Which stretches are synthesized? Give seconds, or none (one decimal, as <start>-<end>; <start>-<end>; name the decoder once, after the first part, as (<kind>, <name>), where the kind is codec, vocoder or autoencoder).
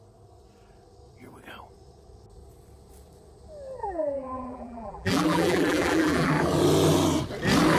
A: 3.8-6.3 (vocoder, BigVGAN v2)